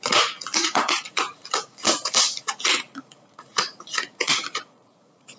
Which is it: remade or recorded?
remade